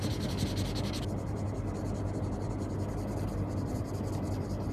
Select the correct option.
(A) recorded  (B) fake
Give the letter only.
A